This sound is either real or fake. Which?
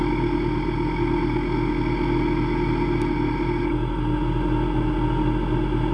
real